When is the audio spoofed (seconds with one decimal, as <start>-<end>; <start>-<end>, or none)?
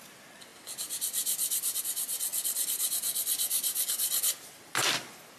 none